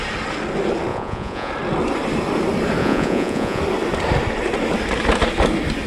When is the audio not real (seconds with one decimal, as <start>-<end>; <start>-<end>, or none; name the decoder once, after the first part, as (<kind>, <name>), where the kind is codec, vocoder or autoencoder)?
0.9-1.5 (vocoder, Vocos); 2.8-3.6